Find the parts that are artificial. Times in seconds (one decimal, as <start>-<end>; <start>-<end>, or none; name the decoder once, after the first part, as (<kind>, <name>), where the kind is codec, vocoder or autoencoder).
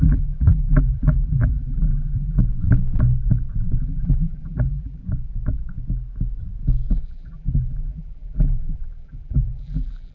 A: 0.0-2.4 (vocoder, BigVGAN v2); 3.8-5.0; 6.9-10.1